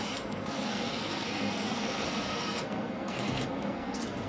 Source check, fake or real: fake